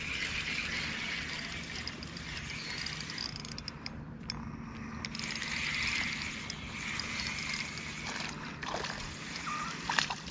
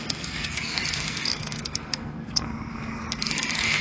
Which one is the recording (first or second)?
first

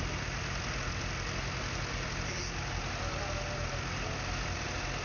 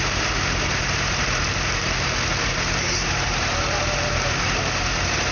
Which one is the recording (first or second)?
first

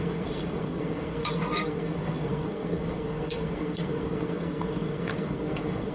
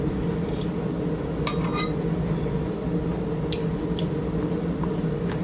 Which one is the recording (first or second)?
second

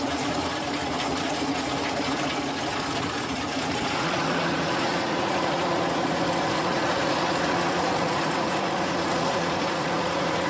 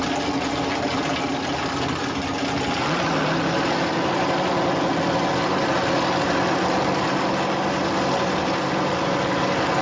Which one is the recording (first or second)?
second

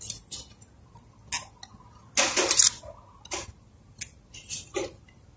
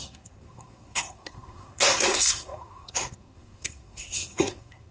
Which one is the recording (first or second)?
first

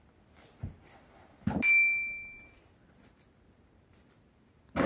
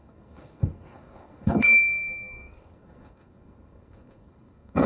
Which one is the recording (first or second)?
first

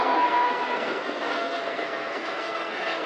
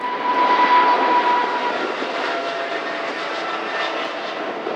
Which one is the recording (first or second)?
second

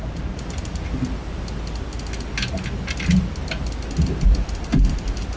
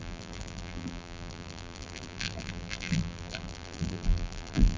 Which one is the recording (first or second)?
first